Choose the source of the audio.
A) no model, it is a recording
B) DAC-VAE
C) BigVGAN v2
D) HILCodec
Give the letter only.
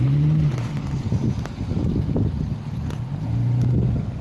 A